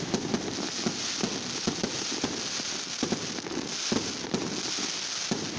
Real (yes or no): yes